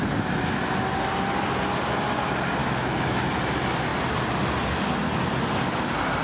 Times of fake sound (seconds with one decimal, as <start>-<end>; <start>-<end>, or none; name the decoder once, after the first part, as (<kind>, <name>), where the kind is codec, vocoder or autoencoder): 2.6-3.2 (autoencoder, DAC-VAE)